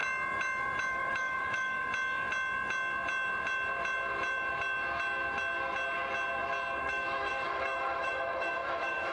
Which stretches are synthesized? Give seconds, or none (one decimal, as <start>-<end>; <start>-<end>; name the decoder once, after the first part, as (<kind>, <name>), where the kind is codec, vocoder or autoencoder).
0.9-1.9 (autoencoder, DAC-VAE); 6.8-9.1